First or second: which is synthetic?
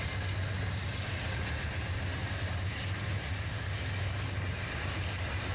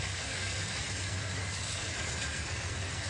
second